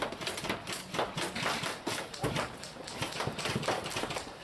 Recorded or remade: recorded